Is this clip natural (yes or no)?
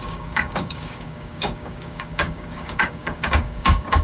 no